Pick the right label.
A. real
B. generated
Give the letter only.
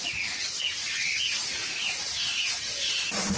A